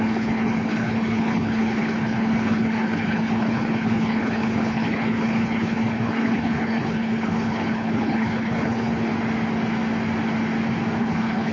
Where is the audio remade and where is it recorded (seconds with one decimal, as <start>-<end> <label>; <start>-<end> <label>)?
0.0-9.1 remade; 9.1-11.0 recorded; 11.0-11.5 remade